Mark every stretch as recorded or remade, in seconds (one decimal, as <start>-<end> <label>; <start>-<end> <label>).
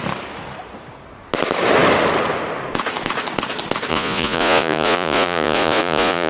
0.0-3.9 recorded; 3.9-6.3 remade